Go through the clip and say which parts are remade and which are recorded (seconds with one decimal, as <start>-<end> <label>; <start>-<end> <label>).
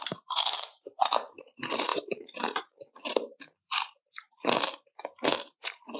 0.0-6.0 remade